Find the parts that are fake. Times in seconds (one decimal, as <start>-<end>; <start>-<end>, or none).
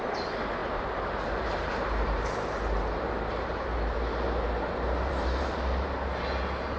0.0-6.8